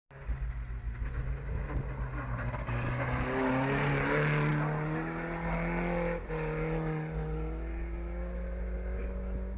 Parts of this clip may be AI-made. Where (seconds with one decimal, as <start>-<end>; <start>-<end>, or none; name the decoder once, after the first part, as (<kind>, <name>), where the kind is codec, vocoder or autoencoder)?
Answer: none